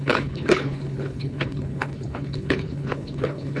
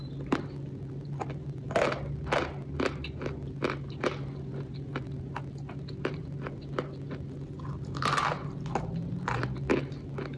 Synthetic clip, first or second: first